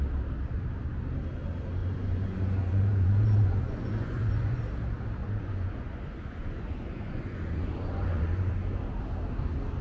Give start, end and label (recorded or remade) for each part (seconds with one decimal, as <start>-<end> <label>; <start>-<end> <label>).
0.0-1.8 recorded; 1.8-4.6 remade; 4.6-5.2 recorded; 5.2-8.5 remade; 8.5-9.8 recorded

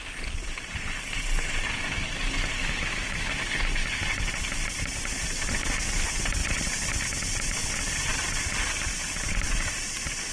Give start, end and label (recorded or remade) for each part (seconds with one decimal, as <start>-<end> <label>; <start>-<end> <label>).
0.0-2.6 recorded; 2.6-3.3 remade; 3.3-10.3 recorded

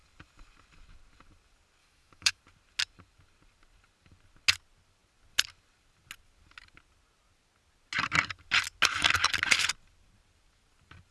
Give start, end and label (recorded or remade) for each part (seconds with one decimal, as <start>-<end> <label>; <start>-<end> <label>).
0.0-1.8 recorded; 1.8-2.4 remade; 2.4-11.1 recorded

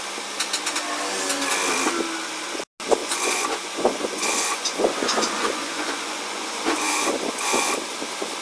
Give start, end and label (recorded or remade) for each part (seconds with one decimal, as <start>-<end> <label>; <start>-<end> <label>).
0.0-3.0 recorded; 3.0-7.7 remade; 7.7-8.4 recorded